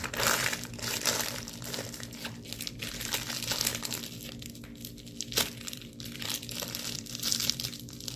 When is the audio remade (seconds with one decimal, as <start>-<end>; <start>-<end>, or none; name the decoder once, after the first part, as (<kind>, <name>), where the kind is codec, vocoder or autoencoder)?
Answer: 0.0-3.7 (vocoder, BigVGAN v2); 5.4-8.2